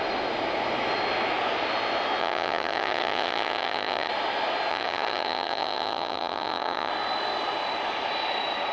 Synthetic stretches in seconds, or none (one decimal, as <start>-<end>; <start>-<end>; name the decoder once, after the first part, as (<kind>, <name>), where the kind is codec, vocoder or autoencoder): 2.2-4.1 (vocoder, HiFi-GAN); 4.7-6.9